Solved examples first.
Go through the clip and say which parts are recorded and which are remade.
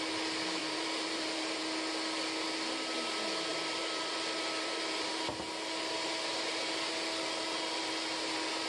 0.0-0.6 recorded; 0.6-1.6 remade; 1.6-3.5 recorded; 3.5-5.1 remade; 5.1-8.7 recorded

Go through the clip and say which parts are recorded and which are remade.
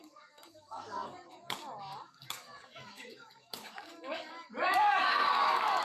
0.0-5.8 remade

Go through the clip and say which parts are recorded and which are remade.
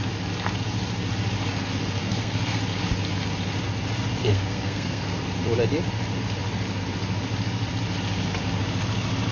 0.0-2.0 recorded; 2.0-2.6 remade; 2.6-4.2 recorded; 4.2-5.2 remade; 5.2-9.3 recorded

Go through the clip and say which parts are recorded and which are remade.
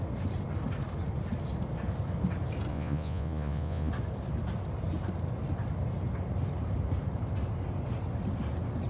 0.0-2.7 recorded; 2.7-3.9 remade; 3.9-8.9 recorded